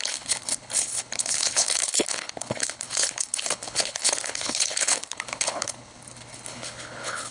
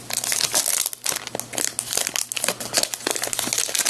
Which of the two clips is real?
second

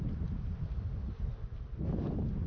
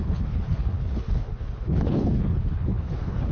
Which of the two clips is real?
first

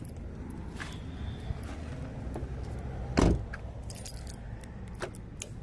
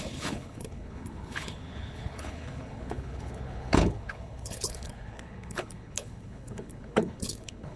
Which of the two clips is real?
first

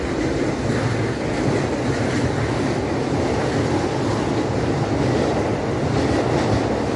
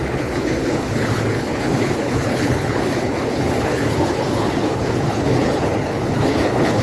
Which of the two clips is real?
first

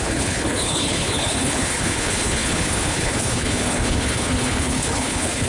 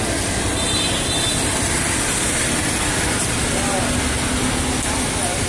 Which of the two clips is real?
second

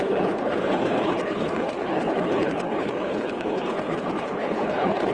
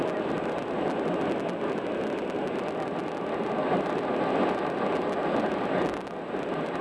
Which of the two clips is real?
second